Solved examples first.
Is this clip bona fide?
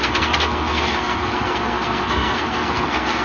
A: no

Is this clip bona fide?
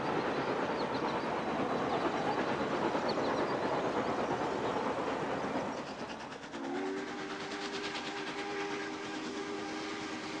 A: yes